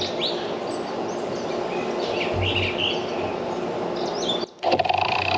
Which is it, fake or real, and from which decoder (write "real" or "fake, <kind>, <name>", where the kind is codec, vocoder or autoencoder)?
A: real